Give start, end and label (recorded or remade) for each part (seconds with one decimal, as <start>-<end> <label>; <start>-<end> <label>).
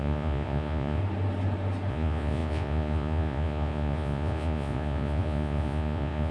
0.0-1.0 remade; 1.0-1.9 recorded; 1.9-6.3 remade